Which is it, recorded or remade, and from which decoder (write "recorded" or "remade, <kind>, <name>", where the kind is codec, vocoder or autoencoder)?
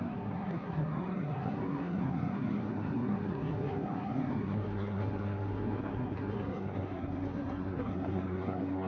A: remade, codec, SNAC